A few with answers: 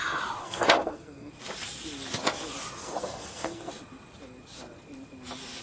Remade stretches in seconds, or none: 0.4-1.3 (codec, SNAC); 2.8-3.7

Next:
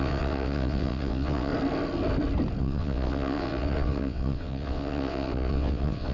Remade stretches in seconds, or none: 0.0-1.5 (vocoder, WaveNeXt); 2.6-6.1

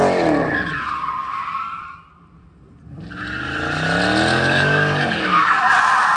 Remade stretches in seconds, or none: 4.3-5.7 (codec, DAC)

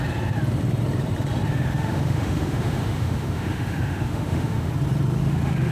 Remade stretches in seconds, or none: 1.5-4.7 (autoencoder, DAC-VAE); 5.2-5.7

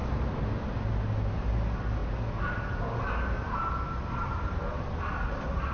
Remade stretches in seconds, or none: none

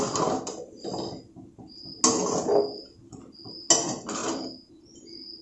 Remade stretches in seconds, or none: 4.2-4.7 (vocoder, BigVGAN v2)